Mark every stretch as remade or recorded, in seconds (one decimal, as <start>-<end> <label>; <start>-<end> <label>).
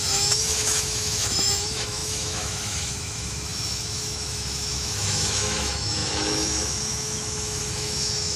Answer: 0.0-8.4 remade